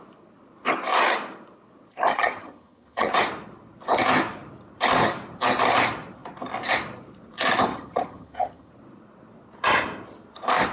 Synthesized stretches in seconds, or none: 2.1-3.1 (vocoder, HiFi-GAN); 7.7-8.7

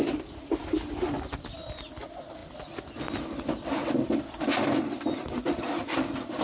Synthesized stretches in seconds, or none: none

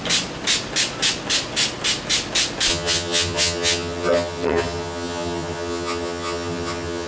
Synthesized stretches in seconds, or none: 2.7-7.1 (vocoder, HiFi-GAN)

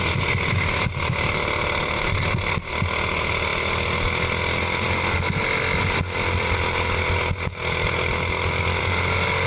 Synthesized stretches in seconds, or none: none

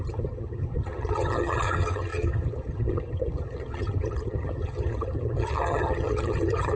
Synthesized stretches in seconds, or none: 0.0-6.8 (vocoder, HiFi-GAN)